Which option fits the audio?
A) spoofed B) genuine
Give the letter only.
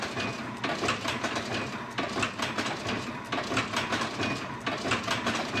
B